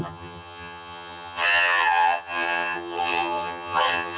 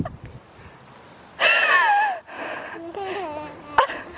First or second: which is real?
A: second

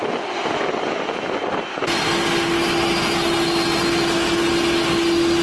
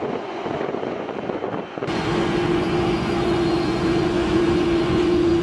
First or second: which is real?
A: first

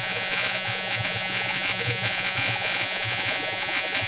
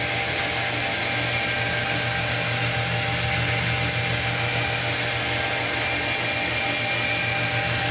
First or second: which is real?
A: second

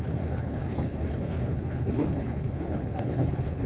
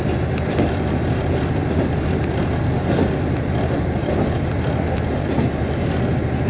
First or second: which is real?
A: second